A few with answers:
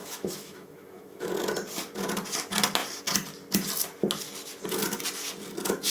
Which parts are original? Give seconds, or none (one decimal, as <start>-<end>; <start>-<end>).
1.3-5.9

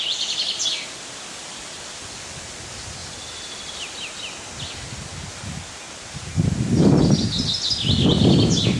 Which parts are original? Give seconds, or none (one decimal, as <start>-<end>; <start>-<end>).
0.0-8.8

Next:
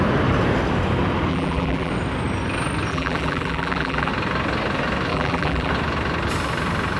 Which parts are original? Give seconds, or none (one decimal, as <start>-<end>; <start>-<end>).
0.0-1.3; 1.9-2.9; 4.1-5.1; 5.7-7.0

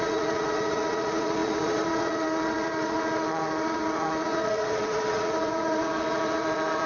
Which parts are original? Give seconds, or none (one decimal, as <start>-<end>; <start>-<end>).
none

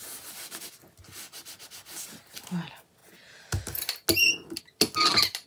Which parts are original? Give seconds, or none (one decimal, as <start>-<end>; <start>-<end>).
0.0-5.5

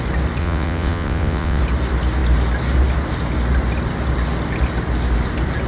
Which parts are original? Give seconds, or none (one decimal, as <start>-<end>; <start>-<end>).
0.0-0.4; 1.6-5.7

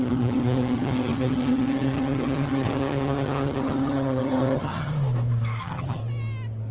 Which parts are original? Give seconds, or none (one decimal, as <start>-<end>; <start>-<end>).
4.9-5.6; 6.0-6.7

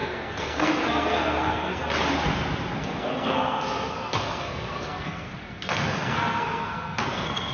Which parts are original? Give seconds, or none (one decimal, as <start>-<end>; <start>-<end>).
1.8-2.8